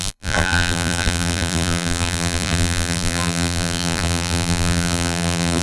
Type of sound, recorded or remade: remade